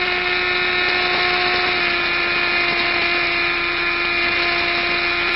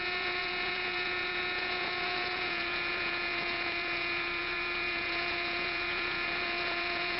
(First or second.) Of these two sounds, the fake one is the second